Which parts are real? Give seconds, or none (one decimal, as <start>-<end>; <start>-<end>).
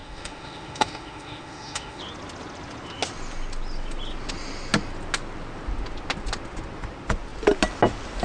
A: 2.0-8.2